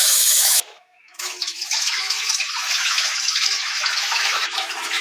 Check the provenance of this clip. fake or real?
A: fake